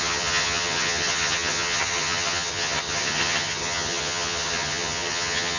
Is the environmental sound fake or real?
fake